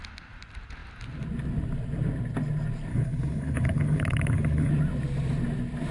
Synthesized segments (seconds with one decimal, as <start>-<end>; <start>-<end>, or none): 2.9-4.7